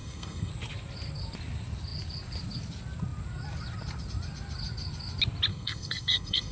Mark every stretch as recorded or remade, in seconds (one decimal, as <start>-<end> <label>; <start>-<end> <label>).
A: 0.0-0.5 remade; 0.5-5.5 recorded; 5.5-6.5 remade